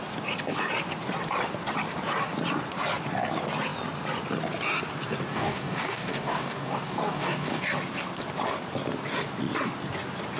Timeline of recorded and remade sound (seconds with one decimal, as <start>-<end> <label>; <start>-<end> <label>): 0.0-5.3 recorded; 5.3-7.6 remade; 7.6-10.4 recorded